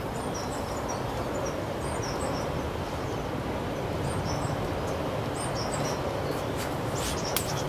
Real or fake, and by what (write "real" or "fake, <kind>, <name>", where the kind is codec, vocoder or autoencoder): real